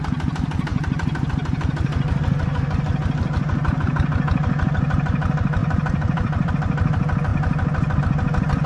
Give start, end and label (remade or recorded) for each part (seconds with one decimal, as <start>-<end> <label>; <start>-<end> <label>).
0.0-0.7 recorded; 0.7-1.3 remade; 1.3-5.6 recorded; 5.6-6.5 remade; 6.5-8.7 recorded